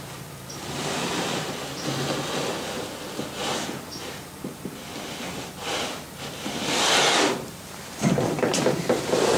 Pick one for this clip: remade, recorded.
remade